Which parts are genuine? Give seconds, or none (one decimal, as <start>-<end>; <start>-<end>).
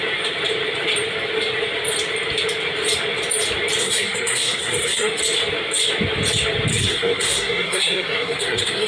0.0-3.8; 5.2-6.7